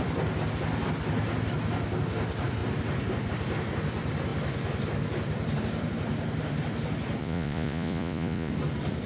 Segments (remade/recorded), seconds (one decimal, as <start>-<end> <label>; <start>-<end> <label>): 0.0-7.2 recorded; 7.2-8.5 remade; 8.5-9.1 recorded